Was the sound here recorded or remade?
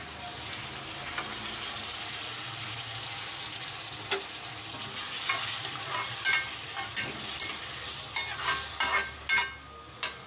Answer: recorded